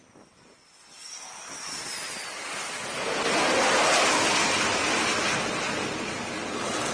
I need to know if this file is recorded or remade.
recorded